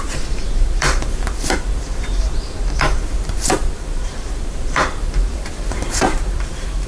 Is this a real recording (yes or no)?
no